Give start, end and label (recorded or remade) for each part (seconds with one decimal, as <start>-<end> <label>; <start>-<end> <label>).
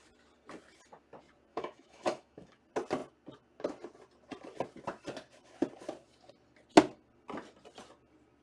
0.0-1.5 recorded; 1.5-2.6 remade; 2.6-8.4 recorded